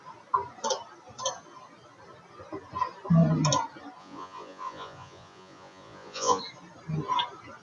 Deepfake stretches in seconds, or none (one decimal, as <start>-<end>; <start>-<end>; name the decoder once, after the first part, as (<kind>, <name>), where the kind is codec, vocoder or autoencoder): 4.0-6.4 (vocoder, Vocos)